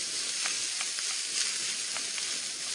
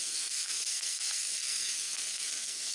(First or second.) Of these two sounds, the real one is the first